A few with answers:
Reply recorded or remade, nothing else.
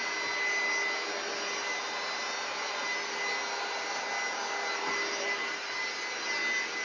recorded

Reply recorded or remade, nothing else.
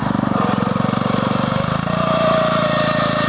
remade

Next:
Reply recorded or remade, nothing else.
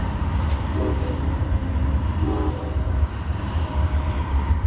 remade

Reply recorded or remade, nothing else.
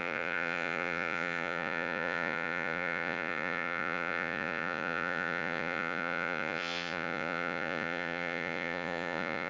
remade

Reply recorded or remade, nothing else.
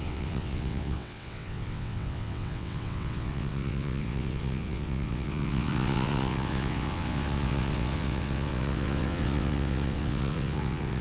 remade